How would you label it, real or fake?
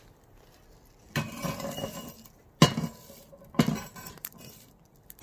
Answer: real